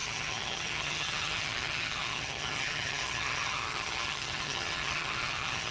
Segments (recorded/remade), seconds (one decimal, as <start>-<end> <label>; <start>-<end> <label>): 0.0-5.7 remade